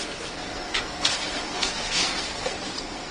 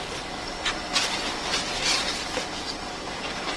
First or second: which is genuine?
second